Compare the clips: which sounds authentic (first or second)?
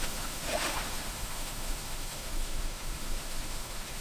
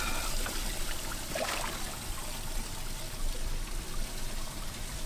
second